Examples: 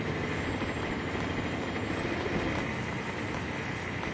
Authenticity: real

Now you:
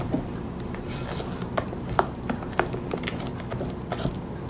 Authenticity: real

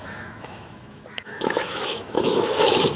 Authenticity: fake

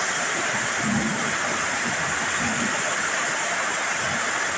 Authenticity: real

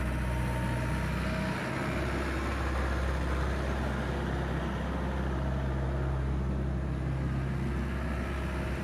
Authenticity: real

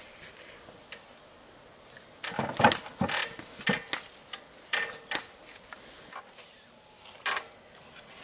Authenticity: real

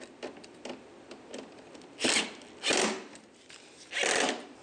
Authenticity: real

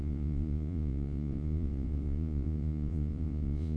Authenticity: fake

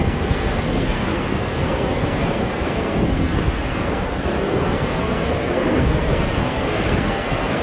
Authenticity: fake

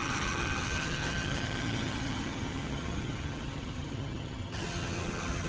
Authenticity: fake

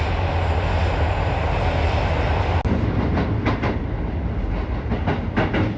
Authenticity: real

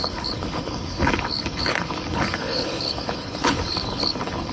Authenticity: fake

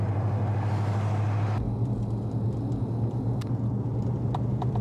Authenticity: real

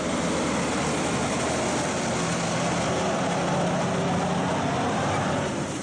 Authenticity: real